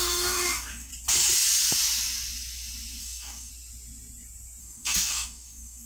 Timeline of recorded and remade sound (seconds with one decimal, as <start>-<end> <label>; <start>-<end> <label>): 0.0-0.9 remade; 0.9-3.0 recorded; 3.0-3.5 remade; 3.5-4.6 recorded; 4.6-5.9 remade